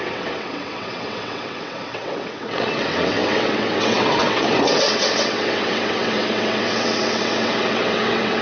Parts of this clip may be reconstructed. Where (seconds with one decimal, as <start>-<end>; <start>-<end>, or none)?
0.0-8.4